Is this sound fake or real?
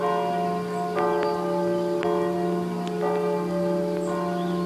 real